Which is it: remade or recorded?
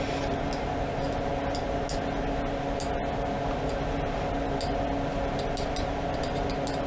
recorded